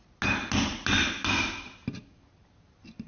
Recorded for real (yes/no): yes